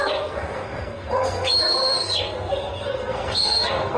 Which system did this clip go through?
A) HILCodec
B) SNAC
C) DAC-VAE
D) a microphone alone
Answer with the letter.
B